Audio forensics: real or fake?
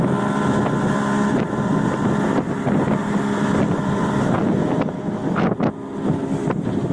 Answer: real